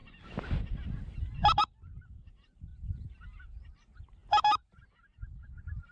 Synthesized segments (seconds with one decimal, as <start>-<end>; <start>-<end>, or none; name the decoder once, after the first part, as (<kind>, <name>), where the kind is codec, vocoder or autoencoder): 0.0-1.6 (vocoder, BigVGAN v2); 2.7-3.6